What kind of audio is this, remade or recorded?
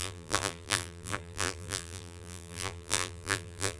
remade